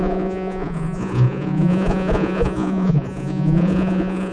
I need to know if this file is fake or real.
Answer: fake